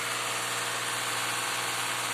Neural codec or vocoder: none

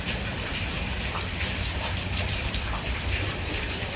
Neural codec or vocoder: vocoder, BigVGAN v2